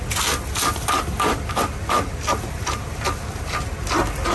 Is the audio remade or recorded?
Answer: recorded